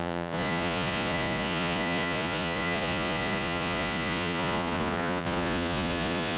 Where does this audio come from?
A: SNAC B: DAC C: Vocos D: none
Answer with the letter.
C